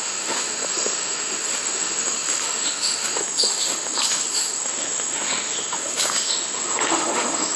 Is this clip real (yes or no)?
no